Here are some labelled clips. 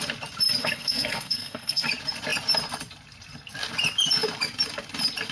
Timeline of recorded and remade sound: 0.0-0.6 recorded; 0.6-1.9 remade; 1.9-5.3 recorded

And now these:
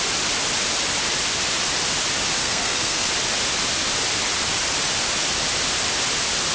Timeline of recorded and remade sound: 0.0-2.4 recorded; 2.4-3.1 remade; 3.1-6.5 recorded